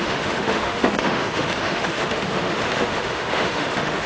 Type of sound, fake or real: fake